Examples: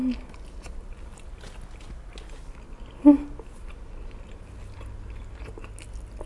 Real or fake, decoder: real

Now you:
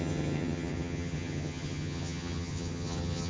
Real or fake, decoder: fake, vocoder, HiFi-GAN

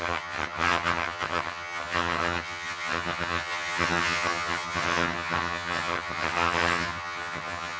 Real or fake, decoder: fake, vocoder, HiFi-GAN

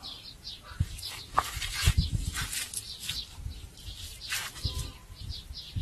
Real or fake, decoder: real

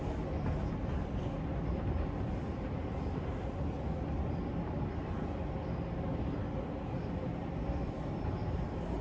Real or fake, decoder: real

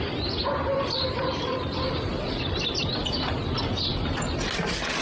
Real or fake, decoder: real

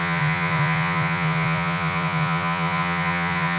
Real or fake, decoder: fake, vocoder, Vocos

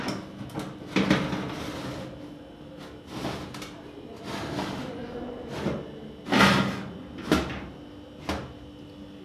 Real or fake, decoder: real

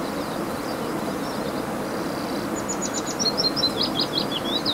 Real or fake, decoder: real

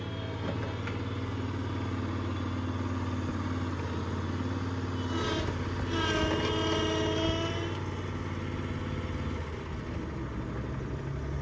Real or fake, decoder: real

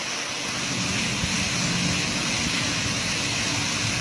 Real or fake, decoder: real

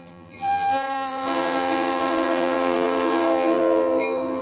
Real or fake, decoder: fake, vocoder, BigVGAN v2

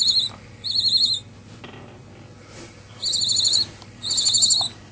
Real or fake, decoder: real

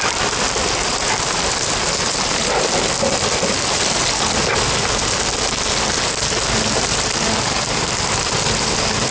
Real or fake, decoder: real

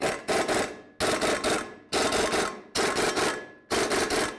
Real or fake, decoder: real